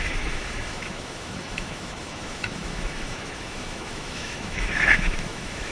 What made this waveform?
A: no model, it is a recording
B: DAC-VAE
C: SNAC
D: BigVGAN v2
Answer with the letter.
B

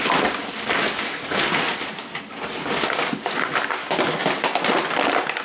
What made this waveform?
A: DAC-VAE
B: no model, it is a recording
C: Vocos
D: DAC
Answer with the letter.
B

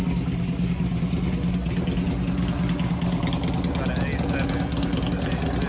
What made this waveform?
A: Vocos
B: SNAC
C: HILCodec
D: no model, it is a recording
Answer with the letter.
D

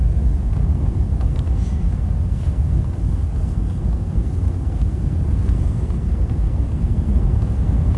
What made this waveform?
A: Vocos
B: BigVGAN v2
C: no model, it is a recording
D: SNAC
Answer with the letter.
D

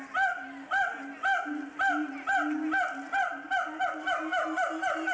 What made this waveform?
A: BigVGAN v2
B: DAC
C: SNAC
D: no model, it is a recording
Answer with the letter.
D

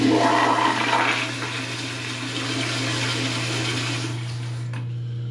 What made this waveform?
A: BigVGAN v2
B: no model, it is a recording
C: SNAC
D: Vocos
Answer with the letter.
B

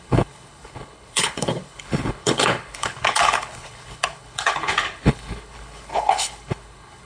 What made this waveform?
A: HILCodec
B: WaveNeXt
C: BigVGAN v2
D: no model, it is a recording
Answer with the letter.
A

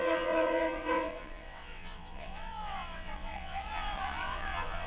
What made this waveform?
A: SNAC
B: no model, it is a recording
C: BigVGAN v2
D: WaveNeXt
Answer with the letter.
D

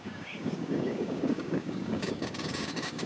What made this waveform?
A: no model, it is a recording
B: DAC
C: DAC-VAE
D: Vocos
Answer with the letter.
B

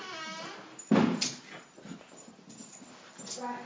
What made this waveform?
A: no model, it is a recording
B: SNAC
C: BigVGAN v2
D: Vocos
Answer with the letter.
A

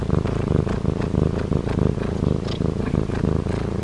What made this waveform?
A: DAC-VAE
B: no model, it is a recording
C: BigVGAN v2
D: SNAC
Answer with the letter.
B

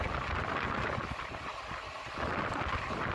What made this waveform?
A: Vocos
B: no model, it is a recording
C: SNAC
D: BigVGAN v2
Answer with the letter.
B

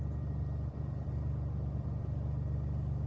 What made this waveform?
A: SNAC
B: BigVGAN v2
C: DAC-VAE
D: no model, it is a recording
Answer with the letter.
D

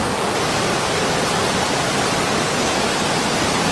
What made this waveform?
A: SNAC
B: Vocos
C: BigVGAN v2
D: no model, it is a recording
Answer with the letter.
D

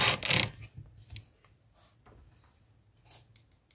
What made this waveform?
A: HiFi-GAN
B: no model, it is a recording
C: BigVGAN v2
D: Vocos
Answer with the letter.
B